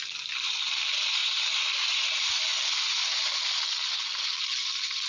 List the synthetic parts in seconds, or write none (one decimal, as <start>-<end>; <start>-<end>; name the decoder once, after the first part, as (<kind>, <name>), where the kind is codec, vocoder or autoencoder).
none